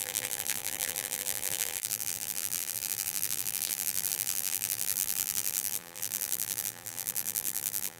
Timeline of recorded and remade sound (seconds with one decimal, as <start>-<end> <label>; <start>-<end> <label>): 0.0-8.0 remade